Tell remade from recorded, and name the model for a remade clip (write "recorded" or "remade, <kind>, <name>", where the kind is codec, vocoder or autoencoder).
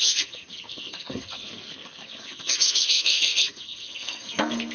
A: remade, codec, SNAC